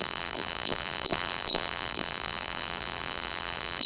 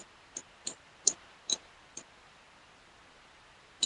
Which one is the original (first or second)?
second